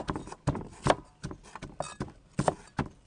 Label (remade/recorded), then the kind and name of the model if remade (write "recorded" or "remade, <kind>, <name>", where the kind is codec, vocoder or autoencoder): recorded